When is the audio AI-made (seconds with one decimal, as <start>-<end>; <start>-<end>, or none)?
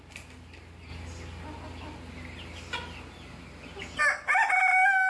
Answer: none